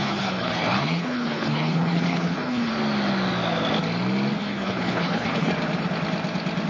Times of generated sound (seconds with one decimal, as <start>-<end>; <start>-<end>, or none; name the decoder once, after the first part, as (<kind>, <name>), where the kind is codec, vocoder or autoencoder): 0.0-2.7 (codec, HILCodec); 4.4-5.5